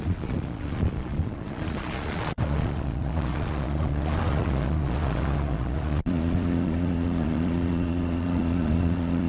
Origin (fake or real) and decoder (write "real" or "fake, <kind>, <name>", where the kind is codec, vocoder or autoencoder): fake, vocoder, Vocos